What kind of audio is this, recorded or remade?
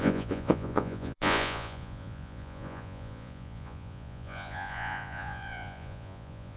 remade